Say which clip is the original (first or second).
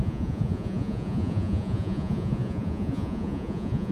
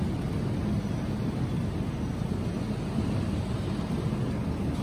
second